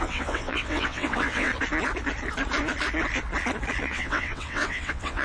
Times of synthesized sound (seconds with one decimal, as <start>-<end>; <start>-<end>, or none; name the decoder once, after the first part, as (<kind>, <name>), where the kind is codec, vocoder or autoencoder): 0.0-1.5 (vocoder, WaveNeXt); 3.8-5.2